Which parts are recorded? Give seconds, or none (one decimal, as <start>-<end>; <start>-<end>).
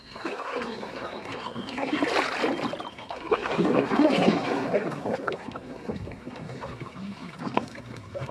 2.0-2.9